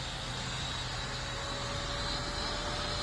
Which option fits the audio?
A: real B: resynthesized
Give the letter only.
A